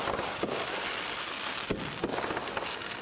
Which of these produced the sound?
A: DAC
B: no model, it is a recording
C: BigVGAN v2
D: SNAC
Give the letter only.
B